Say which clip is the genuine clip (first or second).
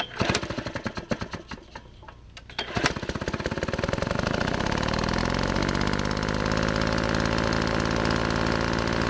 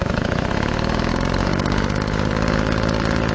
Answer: first